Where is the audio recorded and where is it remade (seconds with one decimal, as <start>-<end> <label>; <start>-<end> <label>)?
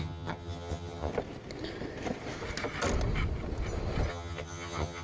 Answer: 0.0-1.1 remade; 1.1-4.1 recorded; 4.1-5.0 remade